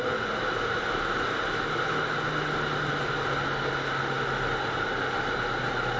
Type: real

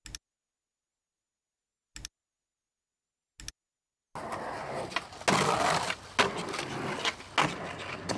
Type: real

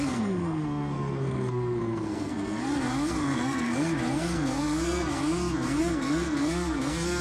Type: fake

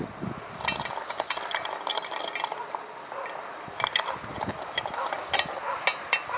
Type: real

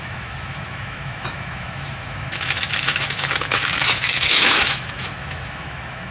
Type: fake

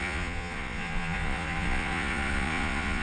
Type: fake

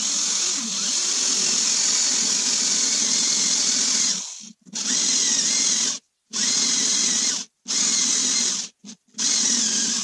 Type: real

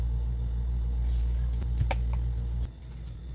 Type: real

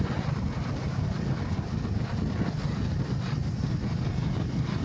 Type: real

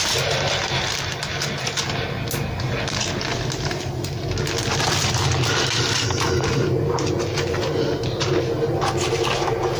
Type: real